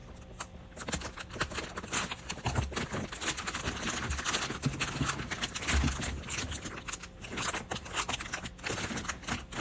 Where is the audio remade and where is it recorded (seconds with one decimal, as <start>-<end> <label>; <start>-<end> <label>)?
0.0-9.6 recorded